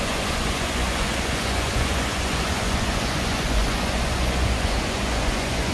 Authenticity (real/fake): fake